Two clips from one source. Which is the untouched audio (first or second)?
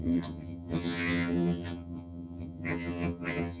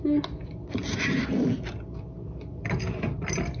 second